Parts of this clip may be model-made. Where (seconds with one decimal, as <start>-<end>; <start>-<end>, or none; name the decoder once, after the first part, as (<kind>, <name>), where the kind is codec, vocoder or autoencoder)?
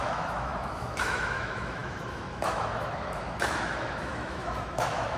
0.0-5.2 (autoencoder, DAC-VAE)